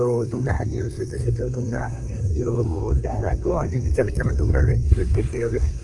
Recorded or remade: remade